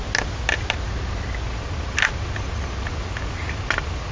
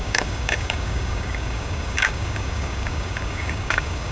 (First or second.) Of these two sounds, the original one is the first